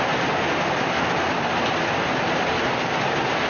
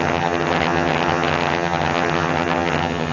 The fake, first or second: second